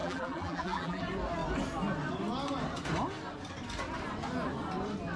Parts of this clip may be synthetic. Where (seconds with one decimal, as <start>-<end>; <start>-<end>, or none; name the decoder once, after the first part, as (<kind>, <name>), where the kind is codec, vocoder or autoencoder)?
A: 0.0-1.0 (vocoder, BigVGAN v2)